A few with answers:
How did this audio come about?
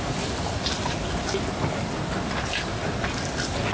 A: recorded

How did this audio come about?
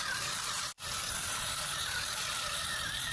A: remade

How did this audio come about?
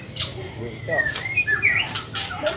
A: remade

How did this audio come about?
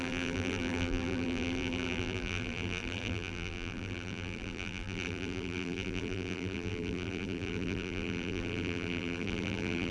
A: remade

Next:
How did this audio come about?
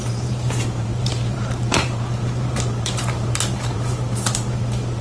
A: remade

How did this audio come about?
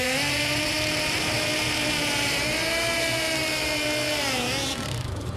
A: remade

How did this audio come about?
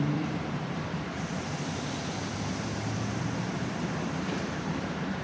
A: remade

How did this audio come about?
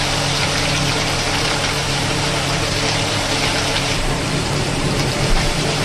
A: remade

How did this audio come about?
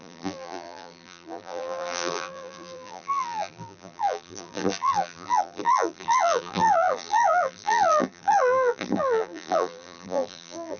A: remade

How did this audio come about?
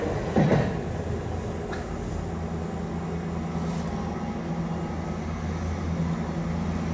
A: recorded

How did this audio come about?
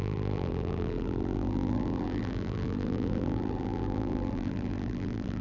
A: remade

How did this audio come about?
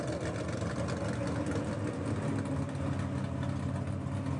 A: recorded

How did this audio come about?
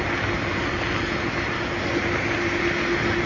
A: recorded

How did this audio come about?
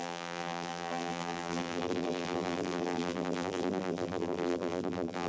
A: remade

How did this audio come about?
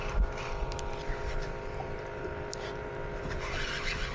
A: remade